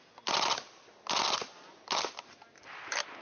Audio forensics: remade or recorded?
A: recorded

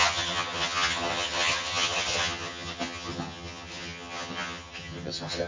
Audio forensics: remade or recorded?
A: remade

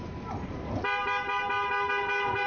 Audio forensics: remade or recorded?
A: recorded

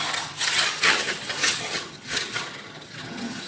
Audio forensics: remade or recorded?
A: remade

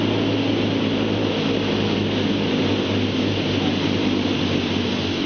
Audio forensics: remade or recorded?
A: recorded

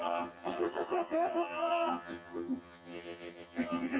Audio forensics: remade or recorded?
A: remade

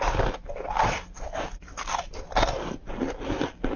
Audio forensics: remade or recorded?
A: recorded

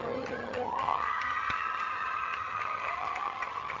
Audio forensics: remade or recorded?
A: remade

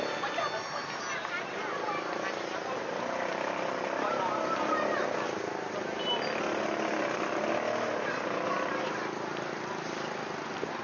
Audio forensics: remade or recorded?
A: recorded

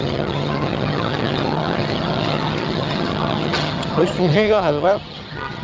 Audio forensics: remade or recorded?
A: remade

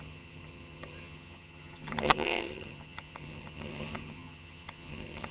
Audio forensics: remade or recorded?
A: remade